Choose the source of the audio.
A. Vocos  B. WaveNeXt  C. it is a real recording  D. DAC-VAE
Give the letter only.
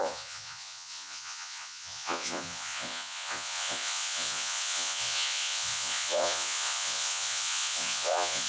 A